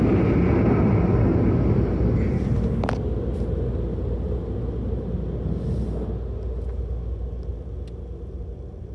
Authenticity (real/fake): real